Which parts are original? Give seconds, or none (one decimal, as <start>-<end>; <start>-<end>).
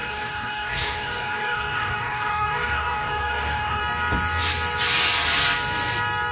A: 3.8-6.3